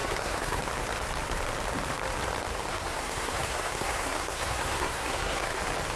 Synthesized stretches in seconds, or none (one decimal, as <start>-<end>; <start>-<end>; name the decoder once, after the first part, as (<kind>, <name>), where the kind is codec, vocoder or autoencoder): 0.0-0.6 (codec, SNAC); 2.7-5.6